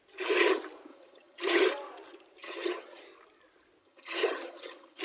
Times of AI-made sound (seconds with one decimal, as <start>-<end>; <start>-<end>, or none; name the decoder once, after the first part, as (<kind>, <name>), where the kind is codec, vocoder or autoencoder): 0.9-1.6 (vocoder, HiFi-GAN); 2.4-3.0; 3.8-5.0